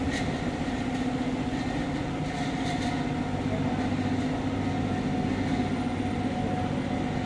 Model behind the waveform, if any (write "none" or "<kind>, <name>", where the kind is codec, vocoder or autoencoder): none